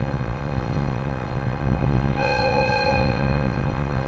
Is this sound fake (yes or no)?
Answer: yes